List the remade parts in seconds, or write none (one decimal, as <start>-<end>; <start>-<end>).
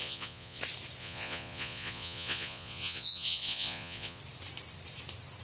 0.0-0.6; 1.0-4.2